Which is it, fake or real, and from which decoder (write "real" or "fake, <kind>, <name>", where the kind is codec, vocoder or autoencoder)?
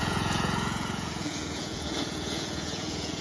fake, vocoder, Vocos